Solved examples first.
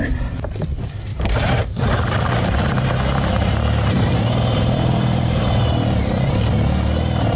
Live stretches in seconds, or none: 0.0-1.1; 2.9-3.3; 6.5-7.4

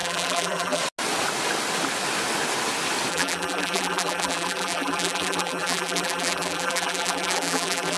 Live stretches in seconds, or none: 0.8-3.1

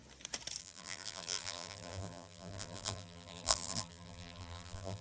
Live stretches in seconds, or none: 0.0-0.6

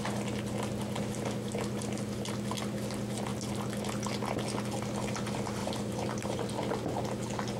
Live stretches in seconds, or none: 0.0-5.6; 6.5-7.6

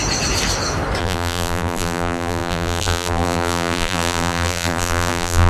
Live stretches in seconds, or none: 0.0-1.0

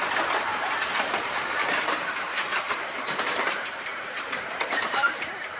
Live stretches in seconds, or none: 0.0-0.5; 3.9-5.6

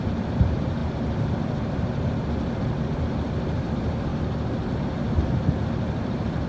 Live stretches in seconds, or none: 4.1-4.8